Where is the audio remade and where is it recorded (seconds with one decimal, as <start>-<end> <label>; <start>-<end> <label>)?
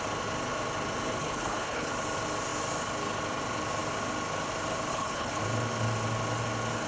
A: 0.0-1.2 recorded; 1.2-1.9 remade; 1.9-4.9 recorded; 4.9-5.4 remade; 5.4-6.9 recorded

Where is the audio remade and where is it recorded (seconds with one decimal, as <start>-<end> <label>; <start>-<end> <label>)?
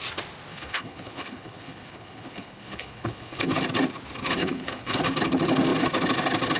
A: 0.0-0.5 recorded; 0.5-3.5 remade; 3.5-4.4 recorded; 4.4-5.0 remade; 5.0-6.6 recorded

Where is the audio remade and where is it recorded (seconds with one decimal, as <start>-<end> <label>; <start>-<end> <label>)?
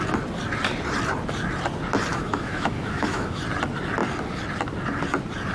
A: 0.0-2.1 recorded; 2.1-3.4 remade; 3.4-5.5 recorded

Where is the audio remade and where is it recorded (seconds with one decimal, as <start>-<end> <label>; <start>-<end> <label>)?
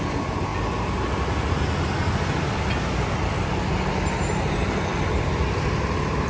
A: 0.0-6.3 recorded